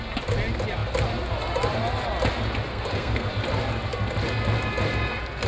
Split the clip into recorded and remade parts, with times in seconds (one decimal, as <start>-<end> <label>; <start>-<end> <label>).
0.0-2.7 recorded; 2.7-3.3 remade; 3.3-5.5 recorded